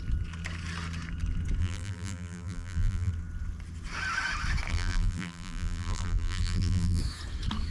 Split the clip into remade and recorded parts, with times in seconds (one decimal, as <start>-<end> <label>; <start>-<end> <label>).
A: 0.0-1.6 recorded; 1.6-3.1 remade; 3.1-4.7 recorded; 4.7-7.0 remade; 7.0-7.7 recorded